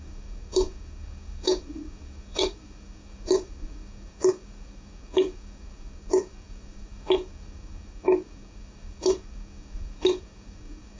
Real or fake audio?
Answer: fake